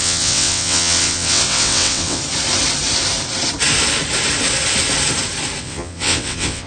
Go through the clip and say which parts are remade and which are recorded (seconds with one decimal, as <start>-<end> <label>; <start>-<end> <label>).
0.0-2.2 remade; 2.2-5.6 recorded; 5.6-6.7 remade